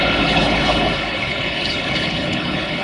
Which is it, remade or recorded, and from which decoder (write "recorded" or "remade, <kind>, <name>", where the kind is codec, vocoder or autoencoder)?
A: remade, codec, HILCodec